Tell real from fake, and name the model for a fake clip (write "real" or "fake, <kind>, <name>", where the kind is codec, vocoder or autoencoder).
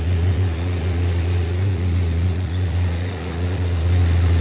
fake, vocoder, Vocos